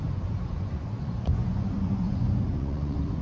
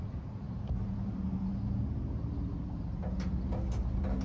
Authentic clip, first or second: second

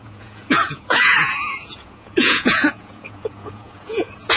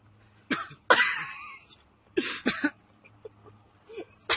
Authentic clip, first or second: second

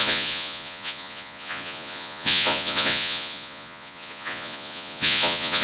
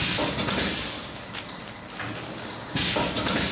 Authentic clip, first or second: second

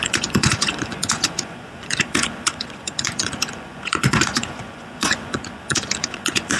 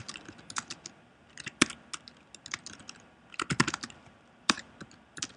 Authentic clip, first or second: second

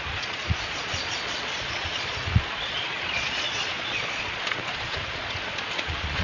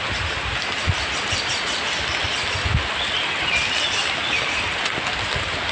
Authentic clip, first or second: second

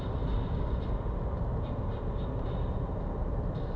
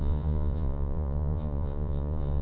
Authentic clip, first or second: first